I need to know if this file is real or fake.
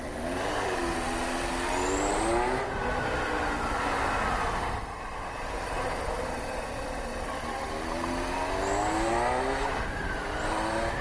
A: real